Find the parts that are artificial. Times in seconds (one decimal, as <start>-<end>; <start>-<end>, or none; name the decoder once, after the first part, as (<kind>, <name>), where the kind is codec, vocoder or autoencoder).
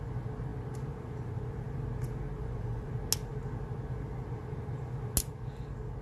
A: 2.4-2.9 (vocoder, Vocos)